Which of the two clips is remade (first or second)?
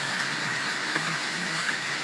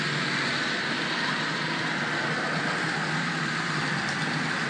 first